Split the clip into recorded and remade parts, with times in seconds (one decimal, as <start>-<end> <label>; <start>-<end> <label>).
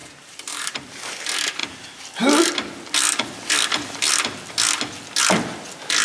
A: 0.0-1.2 remade; 1.2-6.0 recorded